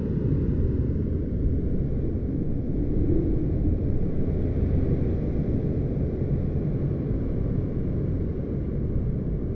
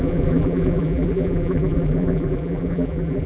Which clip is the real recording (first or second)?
first